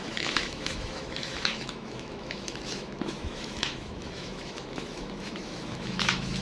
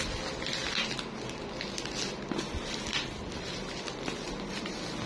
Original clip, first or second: second